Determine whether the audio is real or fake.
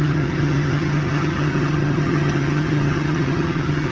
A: fake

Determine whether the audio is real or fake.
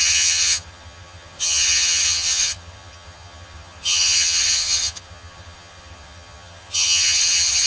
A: fake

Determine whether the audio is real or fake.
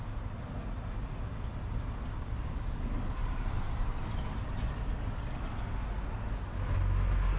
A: real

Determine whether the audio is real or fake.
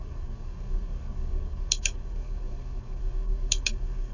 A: fake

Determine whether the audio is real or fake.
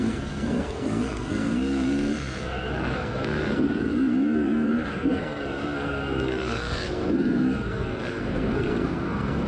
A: fake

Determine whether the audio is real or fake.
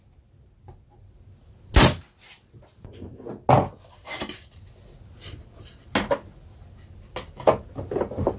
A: real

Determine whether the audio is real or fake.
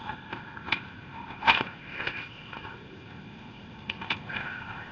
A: fake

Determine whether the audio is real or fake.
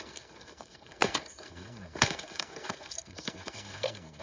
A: fake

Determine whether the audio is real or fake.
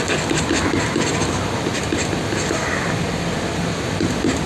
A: real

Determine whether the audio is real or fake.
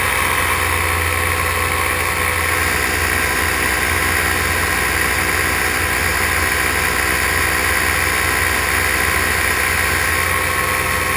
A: real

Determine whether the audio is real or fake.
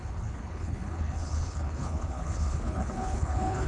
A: fake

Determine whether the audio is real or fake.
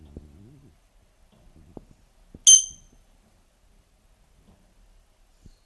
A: real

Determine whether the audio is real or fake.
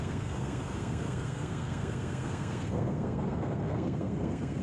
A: fake